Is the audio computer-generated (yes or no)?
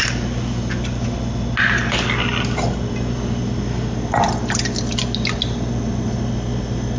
no